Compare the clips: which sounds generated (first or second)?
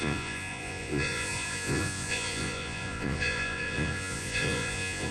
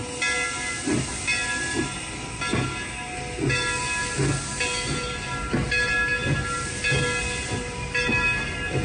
first